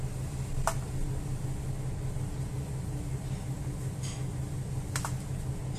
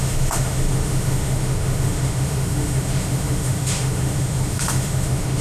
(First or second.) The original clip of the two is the first